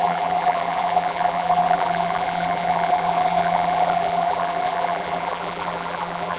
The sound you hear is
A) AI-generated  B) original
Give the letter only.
A